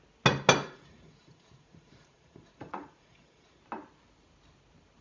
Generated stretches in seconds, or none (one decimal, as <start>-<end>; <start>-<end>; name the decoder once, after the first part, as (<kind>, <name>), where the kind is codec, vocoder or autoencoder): 0.6-3.6 (vocoder, Vocos)